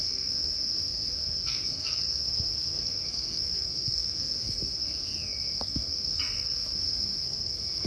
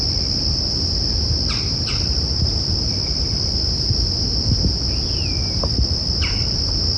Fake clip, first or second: first